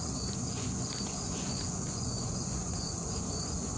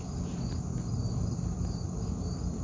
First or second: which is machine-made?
first